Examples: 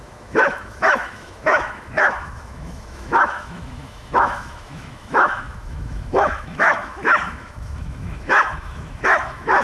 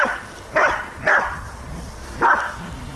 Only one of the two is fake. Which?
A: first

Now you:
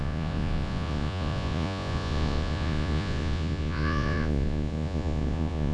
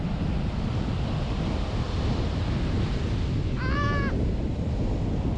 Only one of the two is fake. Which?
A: first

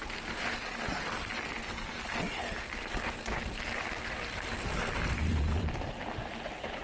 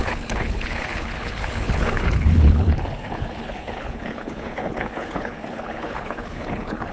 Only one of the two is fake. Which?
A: second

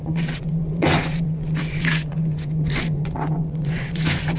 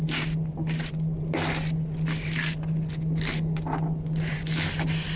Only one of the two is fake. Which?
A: first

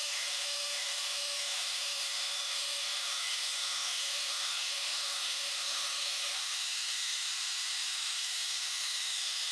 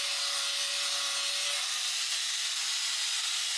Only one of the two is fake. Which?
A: first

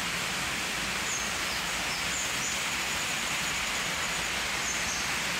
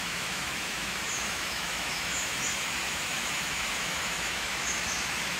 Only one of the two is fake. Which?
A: second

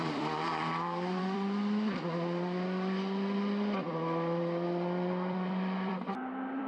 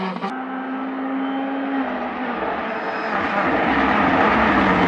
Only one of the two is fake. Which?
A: first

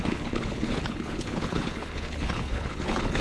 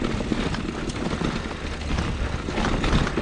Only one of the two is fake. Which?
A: first